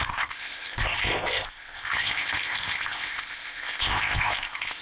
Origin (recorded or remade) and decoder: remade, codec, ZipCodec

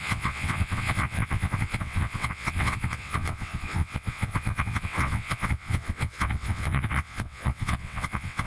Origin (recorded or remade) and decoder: remade, vocoder, WaveNeXt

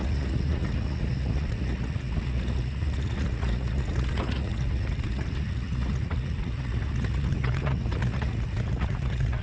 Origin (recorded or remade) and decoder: remade, vocoder, Vocos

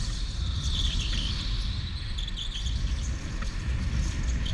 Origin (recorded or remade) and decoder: recorded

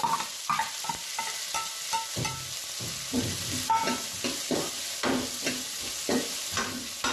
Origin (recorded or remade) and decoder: recorded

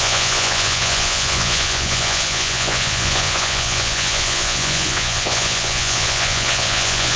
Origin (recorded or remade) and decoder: remade, vocoder, Vocos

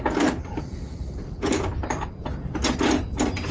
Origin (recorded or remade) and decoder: recorded